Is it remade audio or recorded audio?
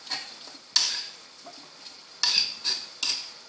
recorded